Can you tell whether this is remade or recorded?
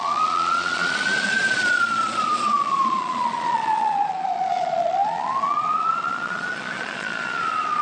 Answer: remade